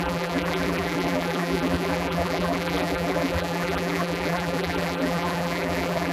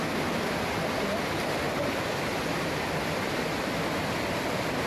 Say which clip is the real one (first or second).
second